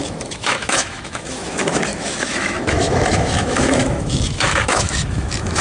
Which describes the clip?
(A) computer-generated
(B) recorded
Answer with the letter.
A